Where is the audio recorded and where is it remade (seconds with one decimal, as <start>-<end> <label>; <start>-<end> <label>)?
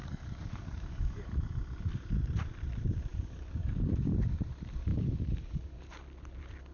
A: 0.0-1.4 remade; 1.4-3.1 recorded; 3.1-4.4 remade; 4.4-4.9 recorded; 4.9-6.0 remade; 6.0-6.7 recorded